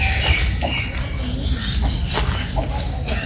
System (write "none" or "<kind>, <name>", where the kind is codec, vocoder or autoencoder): none